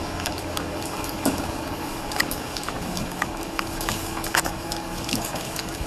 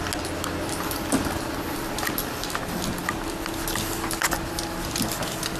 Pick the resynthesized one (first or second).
first